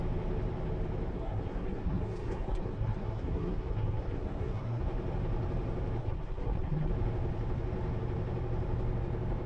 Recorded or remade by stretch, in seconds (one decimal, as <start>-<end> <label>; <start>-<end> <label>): 0.0-1.1 recorded; 1.1-4.8 remade; 4.8-6.0 recorded; 6.0-6.9 remade; 6.9-9.5 recorded